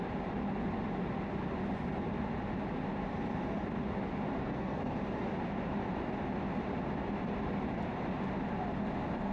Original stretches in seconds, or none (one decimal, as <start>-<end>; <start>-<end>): 0.0-4.4; 4.9-9.3

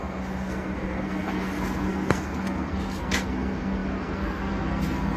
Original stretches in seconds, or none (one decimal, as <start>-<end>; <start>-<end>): none

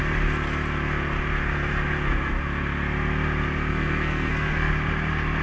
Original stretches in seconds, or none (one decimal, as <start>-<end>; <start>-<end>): 0.0-3.7; 4.7-5.4

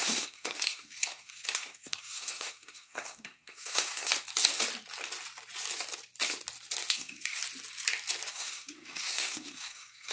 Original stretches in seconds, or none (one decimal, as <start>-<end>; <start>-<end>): 4.1-6.9; 7.4-8.3

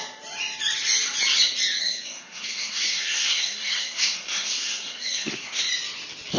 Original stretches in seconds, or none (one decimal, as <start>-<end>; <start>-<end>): 0.0-1.8; 5.6-6.4